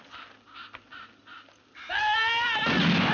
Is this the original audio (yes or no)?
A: yes